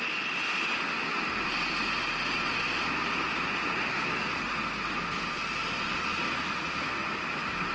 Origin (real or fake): real